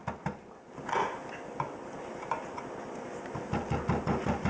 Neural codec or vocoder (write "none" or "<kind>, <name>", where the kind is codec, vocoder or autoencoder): none